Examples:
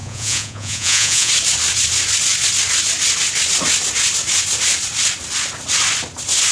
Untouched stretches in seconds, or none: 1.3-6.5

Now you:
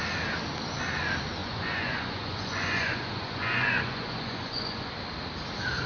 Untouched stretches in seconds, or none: 0.0-1.4; 4.9-5.9

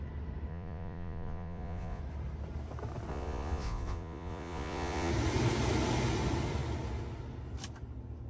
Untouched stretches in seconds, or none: 0.0-0.5; 2.0-3.1; 5.1-8.3

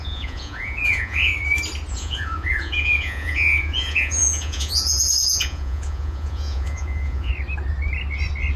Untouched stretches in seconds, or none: 1.3-1.9; 7.3-8.6

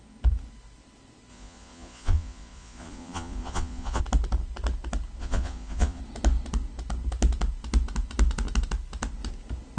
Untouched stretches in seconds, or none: 0.0-1.3; 4.0-5.2; 6.0-9.8

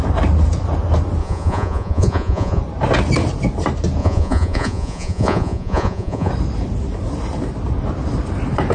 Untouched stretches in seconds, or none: 0.0-1.2; 2.6-4.0; 6.3-8.7